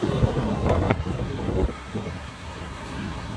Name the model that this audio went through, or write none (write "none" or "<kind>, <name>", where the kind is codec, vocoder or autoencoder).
codec, SNAC